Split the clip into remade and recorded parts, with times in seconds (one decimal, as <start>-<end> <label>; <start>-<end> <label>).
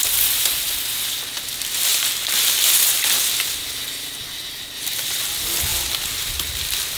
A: 0.0-1.9 recorded; 1.9-2.5 remade; 2.5-7.0 recorded